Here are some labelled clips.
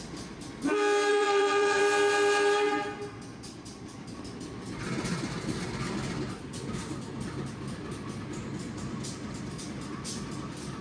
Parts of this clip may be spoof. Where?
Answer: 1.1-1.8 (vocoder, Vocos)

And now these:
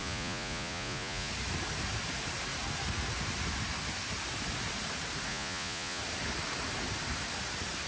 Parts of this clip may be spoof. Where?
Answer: 0.0-1.3 (vocoder, Vocos); 5.3-6.0

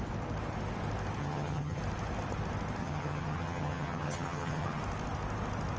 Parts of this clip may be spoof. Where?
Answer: 1.2-1.8 (vocoder, HiFi-GAN); 2.8-4.8

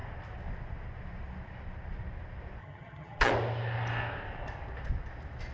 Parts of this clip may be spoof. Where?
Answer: 2.6-3.3 (vocoder, HiFi-GAN)

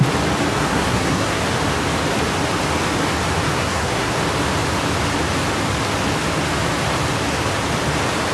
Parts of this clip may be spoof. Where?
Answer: 0.6-1.4 (codec, SNAC); 3.5-4.1